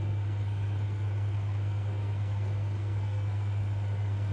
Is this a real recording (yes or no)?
no